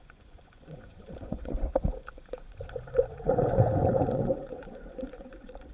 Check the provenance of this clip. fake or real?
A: fake